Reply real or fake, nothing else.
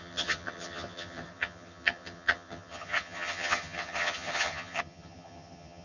fake